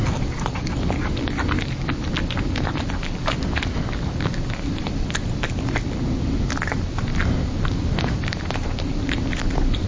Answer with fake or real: real